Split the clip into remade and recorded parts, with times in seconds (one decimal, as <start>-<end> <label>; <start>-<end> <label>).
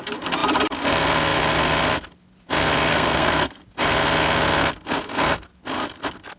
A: 0.0-2.9 recorded; 2.9-3.6 remade; 3.6-6.4 recorded